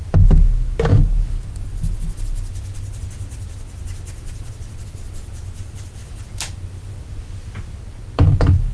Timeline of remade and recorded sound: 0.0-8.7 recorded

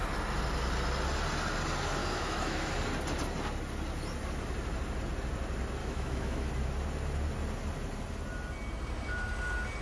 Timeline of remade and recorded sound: 0.0-2.0 recorded; 2.0-2.7 remade; 2.7-5.8 recorded; 5.8-6.5 remade; 6.5-9.8 recorded

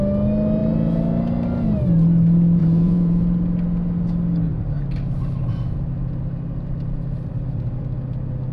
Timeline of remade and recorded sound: 0.0-2.6 recorded; 2.6-3.2 remade; 3.2-8.5 recorded

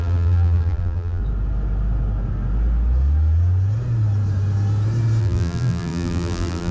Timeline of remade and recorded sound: 0.0-1.2 remade; 1.2-5.2 recorded; 5.2-6.7 remade